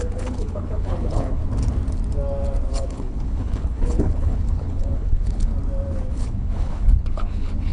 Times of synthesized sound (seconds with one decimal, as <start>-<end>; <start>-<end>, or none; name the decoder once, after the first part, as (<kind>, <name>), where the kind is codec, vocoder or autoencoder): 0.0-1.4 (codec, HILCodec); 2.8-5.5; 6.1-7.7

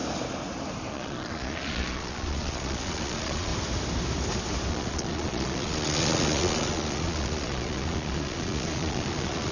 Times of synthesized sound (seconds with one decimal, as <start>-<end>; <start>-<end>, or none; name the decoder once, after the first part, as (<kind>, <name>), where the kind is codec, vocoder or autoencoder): 0.9-3.5 (vocoder, Vocos); 4.7-9.5

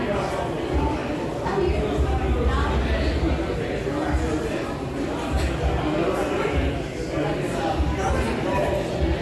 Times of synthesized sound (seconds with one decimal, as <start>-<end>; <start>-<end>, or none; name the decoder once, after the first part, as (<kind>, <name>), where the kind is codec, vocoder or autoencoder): none

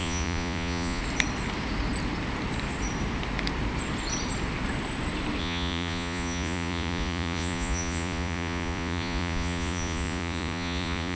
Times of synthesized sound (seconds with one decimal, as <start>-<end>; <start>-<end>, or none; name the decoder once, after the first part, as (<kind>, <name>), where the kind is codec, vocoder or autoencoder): 0.0-1.0 (vocoder, Vocos); 5.4-11.1